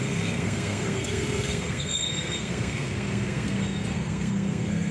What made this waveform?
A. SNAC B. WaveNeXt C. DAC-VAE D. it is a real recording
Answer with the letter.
A